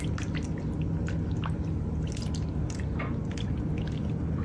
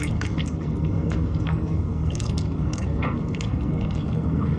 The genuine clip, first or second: first